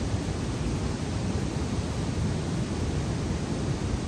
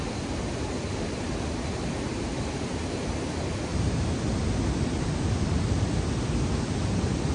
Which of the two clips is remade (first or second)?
first